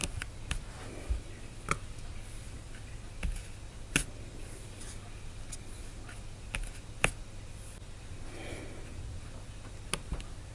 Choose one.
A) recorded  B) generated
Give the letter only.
A